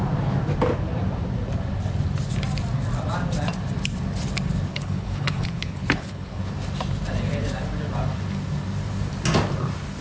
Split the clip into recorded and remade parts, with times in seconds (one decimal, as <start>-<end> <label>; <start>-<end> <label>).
0.0-4.7 recorded; 4.7-6.4 remade; 6.4-10.0 recorded